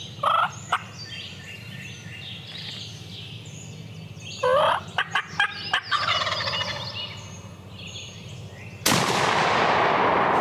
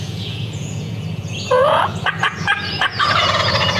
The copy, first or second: second